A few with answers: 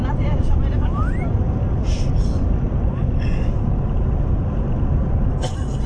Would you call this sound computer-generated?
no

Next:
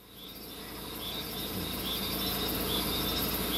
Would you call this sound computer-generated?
no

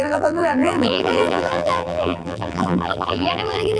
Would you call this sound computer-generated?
yes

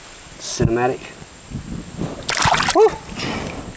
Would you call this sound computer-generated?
no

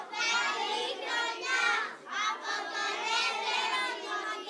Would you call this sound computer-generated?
no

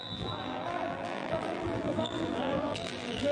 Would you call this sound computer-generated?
yes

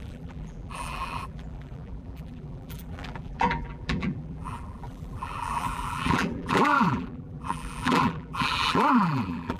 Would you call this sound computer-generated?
yes